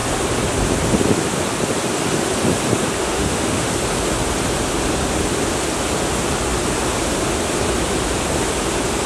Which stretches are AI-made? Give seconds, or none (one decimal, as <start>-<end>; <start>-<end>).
3.0-3.7